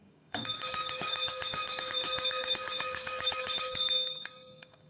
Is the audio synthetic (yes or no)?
yes